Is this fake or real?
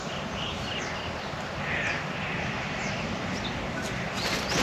real